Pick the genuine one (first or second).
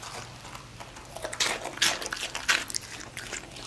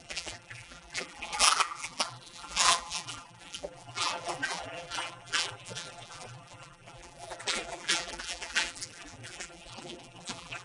first